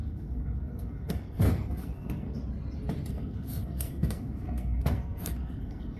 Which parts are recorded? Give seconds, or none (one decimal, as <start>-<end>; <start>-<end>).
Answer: 2.4-3.1